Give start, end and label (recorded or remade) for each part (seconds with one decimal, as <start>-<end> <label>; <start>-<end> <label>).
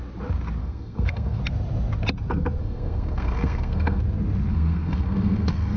0.0-0.6 recorded; 0.6-1.4 remade; 1.4-2.6 recorded; 2.6-4.0 remade; 4.0-4.5 recorded; 4.5-5.8 remade